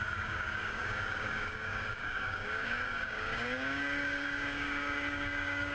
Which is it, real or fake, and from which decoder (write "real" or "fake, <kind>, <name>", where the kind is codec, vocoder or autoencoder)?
fake, codec, DAC